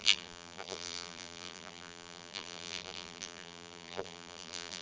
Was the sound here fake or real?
fake